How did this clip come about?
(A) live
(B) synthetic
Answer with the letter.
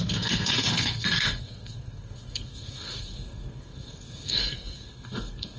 B